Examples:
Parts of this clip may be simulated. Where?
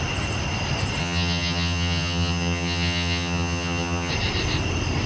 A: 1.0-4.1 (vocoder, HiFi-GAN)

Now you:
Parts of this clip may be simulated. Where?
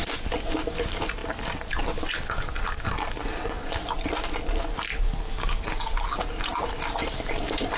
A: none